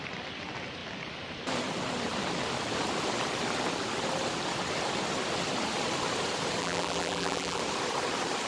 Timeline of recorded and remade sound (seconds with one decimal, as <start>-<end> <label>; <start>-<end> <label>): 0.0-6.6 recorded; 6.6-7.6 remade; 7.6-8.5 recorded